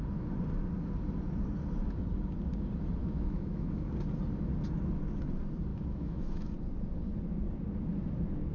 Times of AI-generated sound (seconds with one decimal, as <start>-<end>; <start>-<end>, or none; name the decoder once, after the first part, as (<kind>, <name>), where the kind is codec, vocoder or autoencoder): 3.0-3.9 (autoencoder, DAC-VAE); 5.7-6.5